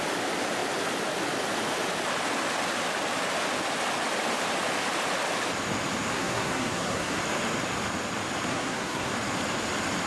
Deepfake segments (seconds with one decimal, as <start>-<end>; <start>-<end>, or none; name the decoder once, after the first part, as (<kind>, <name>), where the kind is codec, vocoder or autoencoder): 6.1-7.2 (codec, SNAC); 8.5-9.1